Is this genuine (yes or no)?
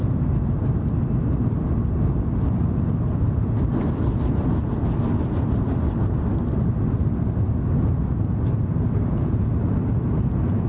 yes